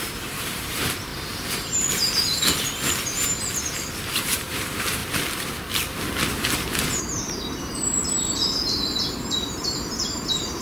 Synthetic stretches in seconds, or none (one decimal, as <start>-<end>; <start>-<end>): 0.0-1.1; 3.9-5.0; 6.2-10.6